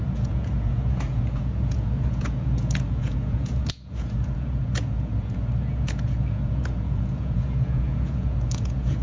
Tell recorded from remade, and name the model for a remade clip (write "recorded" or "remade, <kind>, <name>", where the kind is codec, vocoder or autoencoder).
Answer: remade, vocoder, Vocos